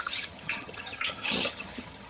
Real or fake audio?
fake